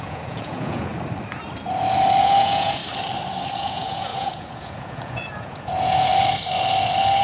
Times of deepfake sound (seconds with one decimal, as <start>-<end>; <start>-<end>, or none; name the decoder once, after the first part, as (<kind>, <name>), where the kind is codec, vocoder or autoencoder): 0.0-0.9 (vocoder, Vocos); 2.2-2.8; 3.5-6.1